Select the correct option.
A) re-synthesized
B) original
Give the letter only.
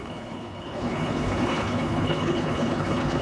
A